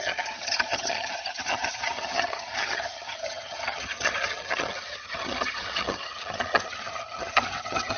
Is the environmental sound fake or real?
fake